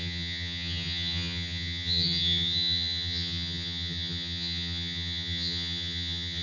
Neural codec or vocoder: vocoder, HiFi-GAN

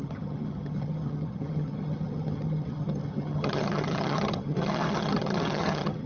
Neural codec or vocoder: vocoder, HiFi-GAN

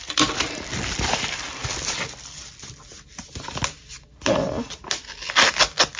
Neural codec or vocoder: none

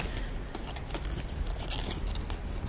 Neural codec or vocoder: none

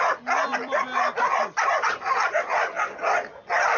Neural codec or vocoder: none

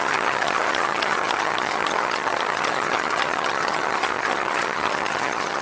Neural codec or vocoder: vocoder, HiFi-GAN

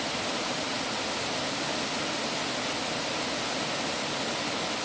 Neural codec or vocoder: none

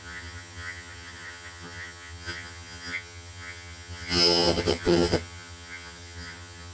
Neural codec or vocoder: vocoder, HiFi-GAN